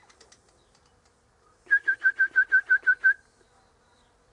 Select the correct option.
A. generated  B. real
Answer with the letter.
B